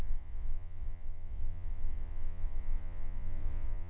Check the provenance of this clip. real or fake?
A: fake